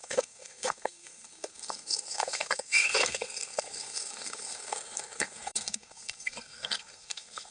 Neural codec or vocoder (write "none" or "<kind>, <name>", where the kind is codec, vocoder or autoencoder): codec, SNAC